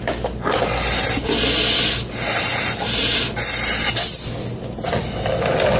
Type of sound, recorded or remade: recorded